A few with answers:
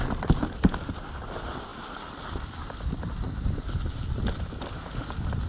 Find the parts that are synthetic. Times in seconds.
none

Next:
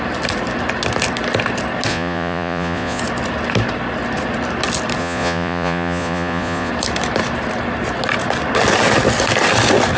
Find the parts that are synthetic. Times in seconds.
1.9-3.0 (vocoder, Vocos); 5.0-6.7

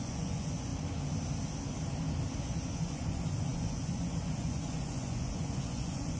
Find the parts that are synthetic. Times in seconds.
0.0-0.7 (vocoder, Vocos); 2.4-6.2

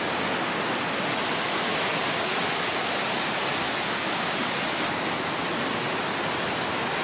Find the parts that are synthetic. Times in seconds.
none